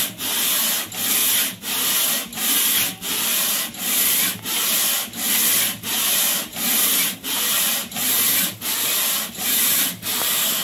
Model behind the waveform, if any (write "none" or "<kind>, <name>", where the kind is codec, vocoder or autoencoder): none